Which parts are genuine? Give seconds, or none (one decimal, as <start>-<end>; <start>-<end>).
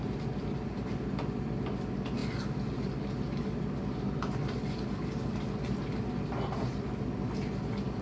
0.0-8.0